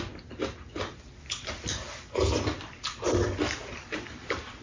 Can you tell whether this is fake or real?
real